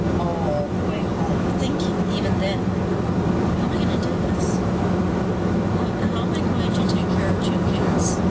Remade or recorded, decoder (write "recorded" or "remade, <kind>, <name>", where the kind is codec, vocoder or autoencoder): recorded